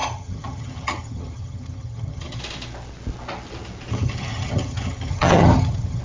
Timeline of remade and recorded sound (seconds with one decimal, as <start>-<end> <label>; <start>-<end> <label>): 0.0-2.4 remade; 2.4-3.9 recorded; 3.9-6.0 remade